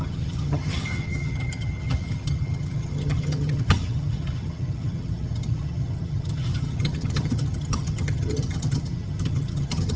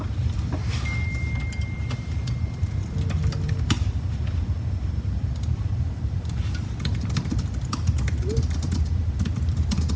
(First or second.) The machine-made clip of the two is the first